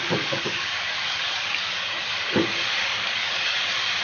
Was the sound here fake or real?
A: fake